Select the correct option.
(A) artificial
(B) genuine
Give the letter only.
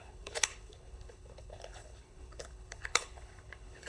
A